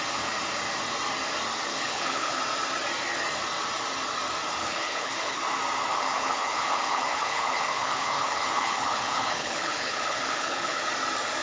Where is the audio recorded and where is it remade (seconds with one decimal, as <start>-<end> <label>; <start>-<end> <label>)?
0.0-1.7 recorded; 1.7-2.4 remade; 2.4-4.6 recorded; 4.6-5.4 remade; 5.4-5.9 recorded; 5.9-10.9 remade; 10.9-11.4 recorded